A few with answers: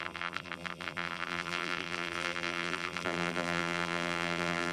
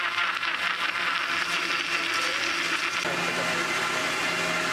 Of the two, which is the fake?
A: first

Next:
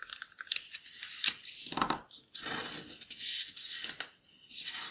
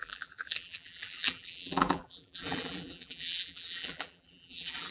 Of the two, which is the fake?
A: second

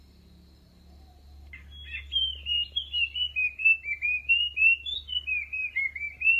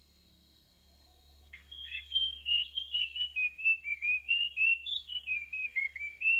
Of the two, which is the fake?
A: second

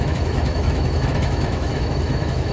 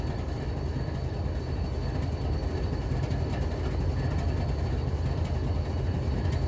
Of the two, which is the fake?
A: first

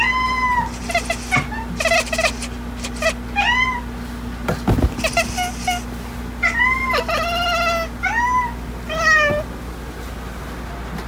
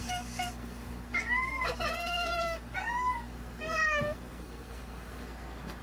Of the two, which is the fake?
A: second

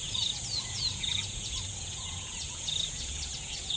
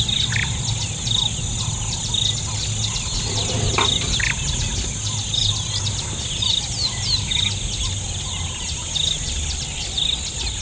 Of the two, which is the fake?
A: first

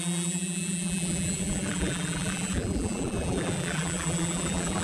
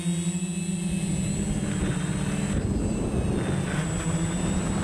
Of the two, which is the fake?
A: first